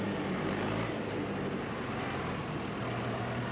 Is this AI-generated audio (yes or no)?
no